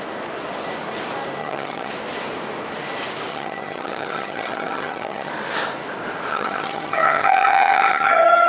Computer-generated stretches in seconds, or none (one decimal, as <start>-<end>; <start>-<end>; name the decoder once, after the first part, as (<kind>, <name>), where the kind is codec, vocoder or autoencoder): 1.4-1.9 (vocoder, HiFi-GAN); 3.3-5.3; 6.3-8.5